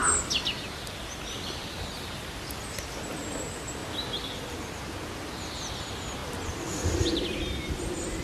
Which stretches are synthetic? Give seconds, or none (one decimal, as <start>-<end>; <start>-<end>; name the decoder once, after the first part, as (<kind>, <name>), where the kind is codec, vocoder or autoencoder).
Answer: none